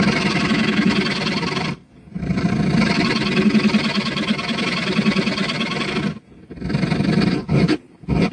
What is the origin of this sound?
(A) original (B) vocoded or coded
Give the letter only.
A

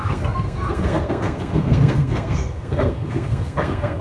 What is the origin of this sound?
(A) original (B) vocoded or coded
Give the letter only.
B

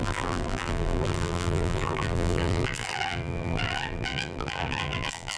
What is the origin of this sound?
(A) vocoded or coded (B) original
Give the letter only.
A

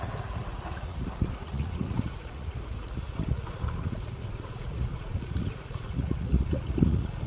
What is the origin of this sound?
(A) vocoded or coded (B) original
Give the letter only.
A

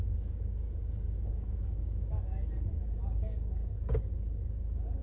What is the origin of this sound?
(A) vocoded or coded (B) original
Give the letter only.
A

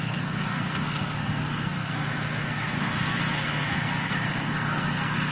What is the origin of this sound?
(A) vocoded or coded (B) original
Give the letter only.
A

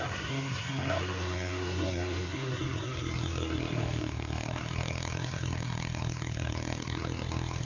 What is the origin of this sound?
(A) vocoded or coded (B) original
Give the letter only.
A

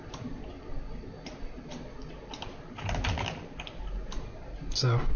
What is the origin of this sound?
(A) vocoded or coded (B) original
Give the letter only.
B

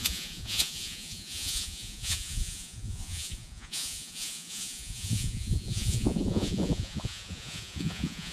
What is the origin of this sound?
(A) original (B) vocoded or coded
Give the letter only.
B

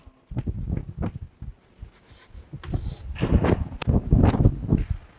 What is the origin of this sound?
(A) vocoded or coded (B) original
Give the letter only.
B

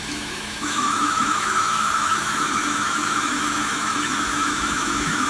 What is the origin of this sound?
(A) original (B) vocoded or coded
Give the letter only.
B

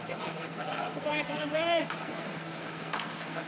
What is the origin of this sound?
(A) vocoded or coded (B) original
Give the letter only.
A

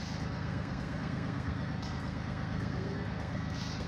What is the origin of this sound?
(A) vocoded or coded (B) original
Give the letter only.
A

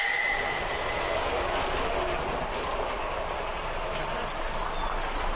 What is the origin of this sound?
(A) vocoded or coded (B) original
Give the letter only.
B